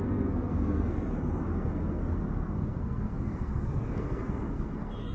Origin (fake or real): fake